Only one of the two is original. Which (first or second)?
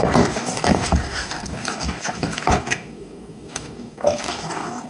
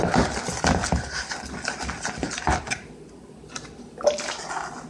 second